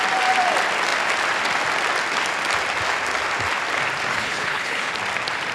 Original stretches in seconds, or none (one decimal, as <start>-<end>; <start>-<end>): 0.0-4.1; 4.9-5.5